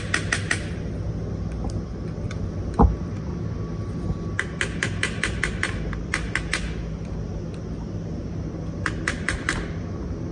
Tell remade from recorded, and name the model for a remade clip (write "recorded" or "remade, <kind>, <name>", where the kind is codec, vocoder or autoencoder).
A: recorded